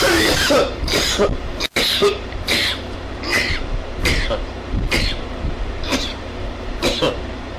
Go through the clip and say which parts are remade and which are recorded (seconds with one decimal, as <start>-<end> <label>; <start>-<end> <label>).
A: 0.0-7.6 remade